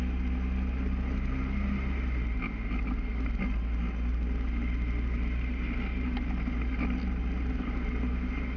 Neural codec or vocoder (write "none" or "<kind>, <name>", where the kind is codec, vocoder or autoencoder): none